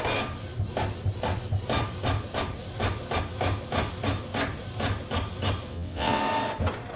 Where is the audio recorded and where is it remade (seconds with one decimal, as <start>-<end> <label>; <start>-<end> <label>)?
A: 0.0-5.7 recorded; 5.7-6.2 remade; 6.2-7.0 recorded

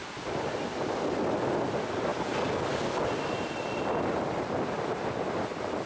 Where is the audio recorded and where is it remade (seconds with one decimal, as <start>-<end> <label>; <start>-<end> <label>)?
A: 0.0-5.9 recorded

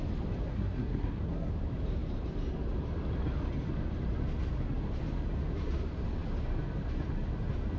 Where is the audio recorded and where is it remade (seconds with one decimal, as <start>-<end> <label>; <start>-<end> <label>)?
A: 0.0-0.5 recorded; 0.5-1.5 remade; 1.5-7.8 recorded